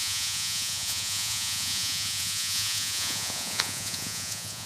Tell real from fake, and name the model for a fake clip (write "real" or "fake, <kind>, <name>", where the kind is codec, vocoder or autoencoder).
fake, vocoder, Vocos